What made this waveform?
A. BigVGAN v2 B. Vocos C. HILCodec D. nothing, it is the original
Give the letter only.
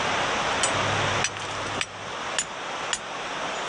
D